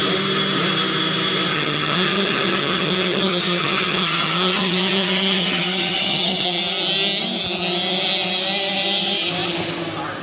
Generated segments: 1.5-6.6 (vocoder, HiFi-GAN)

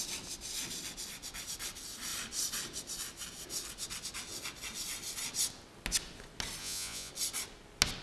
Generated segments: 6.6-7.1 (vocoder, Vocos)

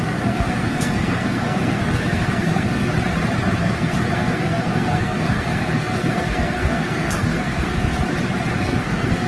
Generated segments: 0.0-2.9 (codec, SNAC); 3.6-8.0; 8.6-9.3